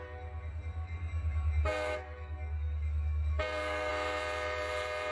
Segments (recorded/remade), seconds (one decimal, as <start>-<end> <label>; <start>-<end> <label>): 0.0-0.8 recorded; 0.8-3.9 remade; 3.9-5.1 recorded

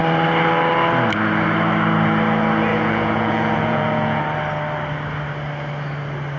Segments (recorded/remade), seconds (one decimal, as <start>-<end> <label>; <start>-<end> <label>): 0.0-2.7 recorded; 2.7-4.2 remade; 4.2-6.4 recorded